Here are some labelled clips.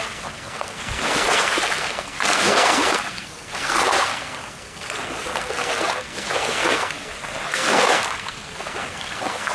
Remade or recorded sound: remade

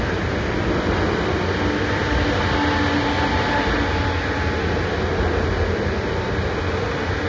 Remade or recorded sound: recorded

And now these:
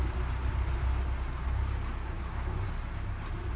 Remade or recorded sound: recorded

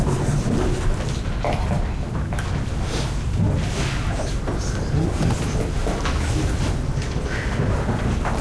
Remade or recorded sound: recorded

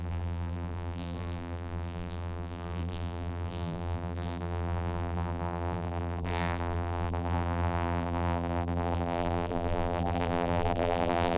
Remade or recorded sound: remade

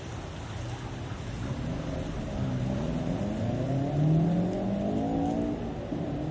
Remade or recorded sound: recorded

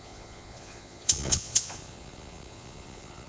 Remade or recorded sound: remade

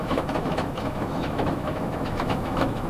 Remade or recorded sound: remade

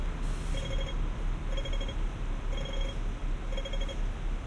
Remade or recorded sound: recorded